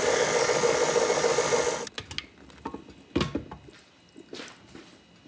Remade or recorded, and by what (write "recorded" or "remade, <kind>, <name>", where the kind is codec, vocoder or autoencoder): recorded